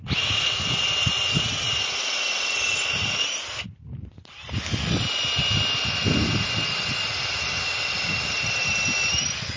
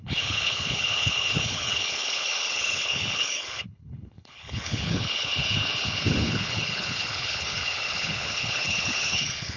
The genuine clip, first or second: first